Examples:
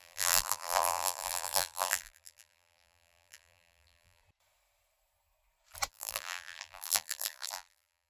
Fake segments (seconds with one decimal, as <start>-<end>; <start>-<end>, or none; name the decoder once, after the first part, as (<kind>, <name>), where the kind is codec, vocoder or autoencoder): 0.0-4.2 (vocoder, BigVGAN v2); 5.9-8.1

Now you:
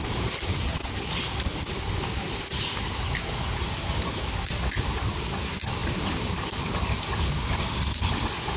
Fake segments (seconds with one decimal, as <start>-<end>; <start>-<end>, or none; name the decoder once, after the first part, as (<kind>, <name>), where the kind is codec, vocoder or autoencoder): none

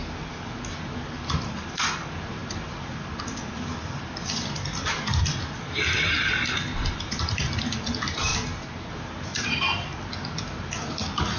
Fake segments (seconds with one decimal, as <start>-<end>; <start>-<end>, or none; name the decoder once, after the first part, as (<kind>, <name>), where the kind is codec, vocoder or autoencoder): 1.6-8.3 (vocoder, BigVGAN v2); 8.9-9.9; 10.7-11.4

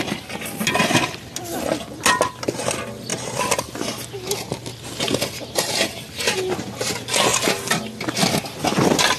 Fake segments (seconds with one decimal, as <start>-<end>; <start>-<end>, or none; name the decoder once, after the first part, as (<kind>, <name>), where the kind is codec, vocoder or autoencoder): none

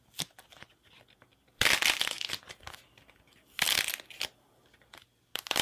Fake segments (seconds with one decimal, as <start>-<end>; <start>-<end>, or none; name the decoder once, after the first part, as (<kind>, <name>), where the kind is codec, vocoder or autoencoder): none

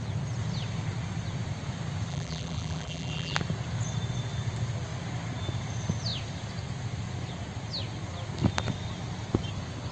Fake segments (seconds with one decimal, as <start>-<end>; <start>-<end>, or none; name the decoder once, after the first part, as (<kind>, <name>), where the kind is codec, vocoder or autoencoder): 2.1-3.4 (vocoder, BigVGAN v2)